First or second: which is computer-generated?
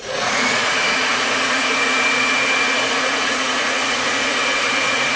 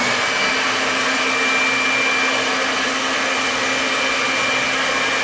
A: first